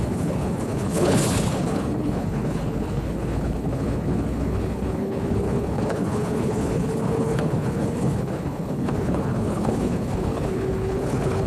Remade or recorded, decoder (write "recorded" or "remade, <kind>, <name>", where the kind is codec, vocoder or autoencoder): remade, codec, HILCodec